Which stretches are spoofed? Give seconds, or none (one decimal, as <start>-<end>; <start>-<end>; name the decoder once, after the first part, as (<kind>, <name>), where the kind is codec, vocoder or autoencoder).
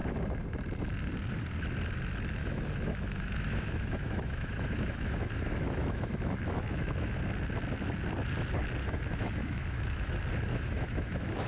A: 2.4-7.2 (autoencoder, DAC-VAE); 8.8-10.1; 10.5-11.5